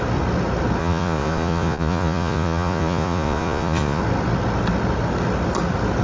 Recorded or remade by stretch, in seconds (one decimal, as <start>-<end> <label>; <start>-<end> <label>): 0.0-0.8 recorded; 0.8-4.0 remade; 4.0-6.0 recorded